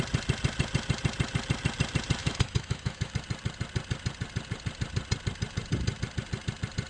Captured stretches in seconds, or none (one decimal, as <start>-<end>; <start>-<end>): 0.0-2.2; 3.1-6.9